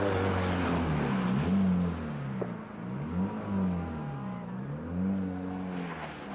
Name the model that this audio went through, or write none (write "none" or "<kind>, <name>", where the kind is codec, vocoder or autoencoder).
none